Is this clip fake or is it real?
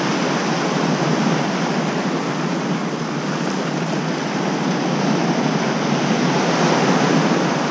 real